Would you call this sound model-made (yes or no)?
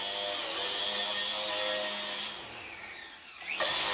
no